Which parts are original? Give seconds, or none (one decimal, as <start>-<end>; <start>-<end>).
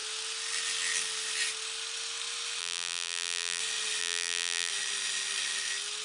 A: 0.0-2.6; 3.6-4.0; 4.7-6.0